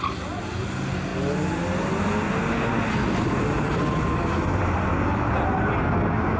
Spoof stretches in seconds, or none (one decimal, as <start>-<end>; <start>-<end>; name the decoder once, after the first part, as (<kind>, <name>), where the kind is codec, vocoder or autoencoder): none